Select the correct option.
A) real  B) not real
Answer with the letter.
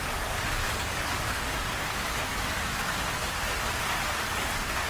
B